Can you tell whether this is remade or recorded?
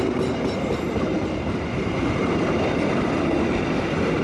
recorded